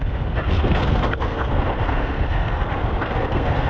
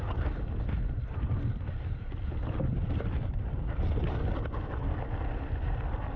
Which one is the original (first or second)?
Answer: second